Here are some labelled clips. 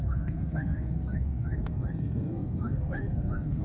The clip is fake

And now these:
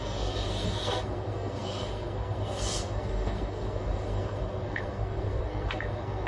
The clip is fake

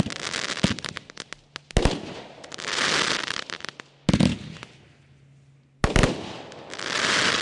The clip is real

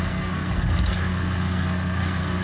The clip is fake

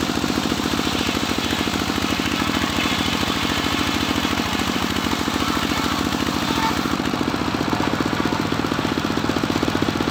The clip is real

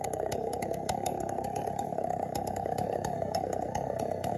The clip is fake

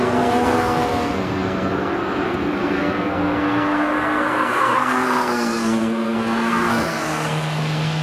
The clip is fake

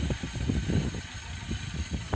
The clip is real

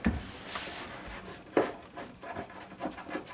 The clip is real